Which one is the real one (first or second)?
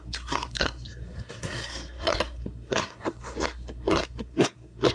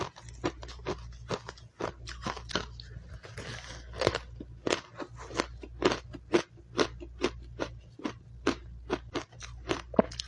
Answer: second